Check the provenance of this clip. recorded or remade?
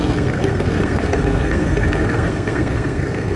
remade